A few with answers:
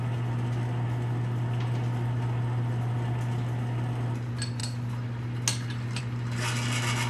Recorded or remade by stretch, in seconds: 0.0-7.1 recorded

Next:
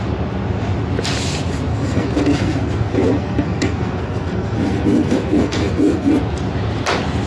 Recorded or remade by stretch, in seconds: 0.0-1.7 recorded; 1.7-6.1 remade; 6.1-7.3 recorded

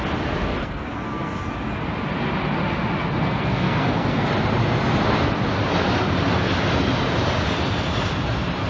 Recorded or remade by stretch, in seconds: 0.0-0.6 recorded; 0.6-1.5 remade; 1.5-3.2 recorded; 3.2-4.3 remade; 4.3-8.7 recorded

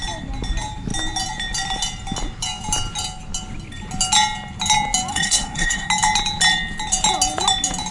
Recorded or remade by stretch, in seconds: 0.0-5.1 recorded; 5.1-5.9 remade; 5.9-7.9 recorded

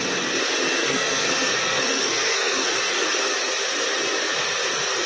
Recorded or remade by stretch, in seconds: 0.0-0.8 recorded; 0.8-3.2 remade; 3.2-5.1 recorded

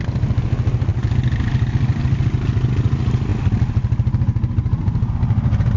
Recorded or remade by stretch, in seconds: 0.0-5.8 recorded

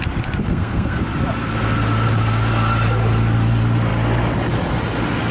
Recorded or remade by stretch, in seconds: 0.0-0.4 recorded; 0.4-1.0 remade; 1.0-5.3 recorded